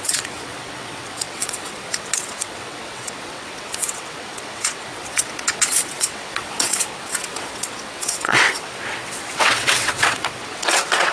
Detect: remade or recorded remade